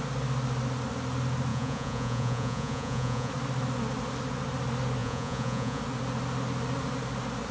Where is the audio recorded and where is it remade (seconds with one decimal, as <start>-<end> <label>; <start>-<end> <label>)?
0.0-1.5 recorded; 1.5-3.3 remade; 3.3-5.0 recorded; 5.0-5.8 remade; 5.8-7.5 recorded